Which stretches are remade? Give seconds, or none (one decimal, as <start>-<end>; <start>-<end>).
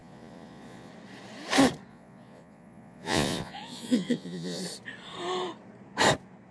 0.0-0.9; 1.9-4.6